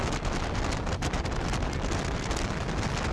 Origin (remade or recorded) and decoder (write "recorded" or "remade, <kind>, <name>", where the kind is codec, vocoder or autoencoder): recorded